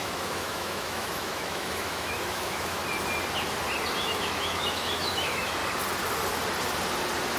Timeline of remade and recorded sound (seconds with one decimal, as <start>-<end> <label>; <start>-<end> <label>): 0.0-2.8 remade; 2.8-4.0 recorded; 4.0-5.6 remade; 5.6-7.4 recorded